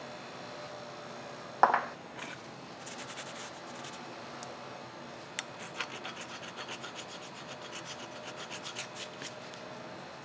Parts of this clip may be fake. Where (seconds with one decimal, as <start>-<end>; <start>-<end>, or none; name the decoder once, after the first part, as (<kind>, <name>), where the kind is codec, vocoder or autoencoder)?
none